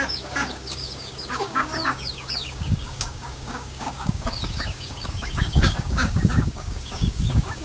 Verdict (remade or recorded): remade